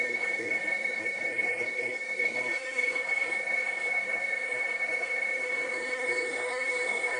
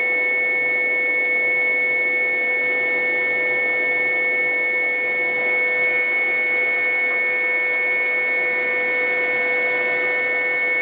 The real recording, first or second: second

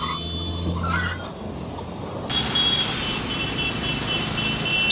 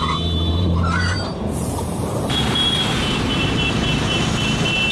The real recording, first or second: first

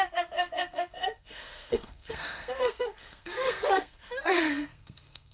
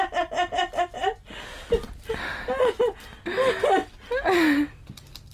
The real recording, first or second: second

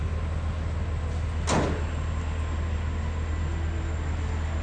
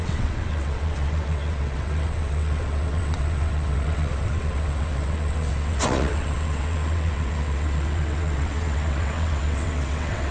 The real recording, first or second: first